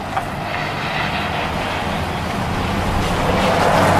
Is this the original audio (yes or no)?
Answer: yes